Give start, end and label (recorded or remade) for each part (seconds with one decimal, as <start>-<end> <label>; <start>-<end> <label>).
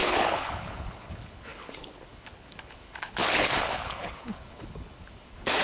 0.0-5.6 remade